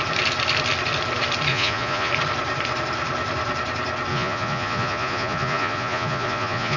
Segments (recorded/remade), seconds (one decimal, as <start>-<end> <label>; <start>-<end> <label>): 0.0-1.5 recorded; 1.5-2.1 remade; 2.1-4.1 recorded; 4.1-6.8 remade